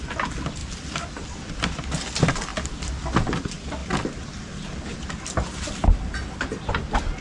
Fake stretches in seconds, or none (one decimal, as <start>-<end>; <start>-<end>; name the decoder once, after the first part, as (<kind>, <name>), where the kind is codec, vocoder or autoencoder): 0.6-1.6 (vocoder, BigVGAN v2); 3.8-6.7